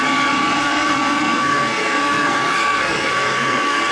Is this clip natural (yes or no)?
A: no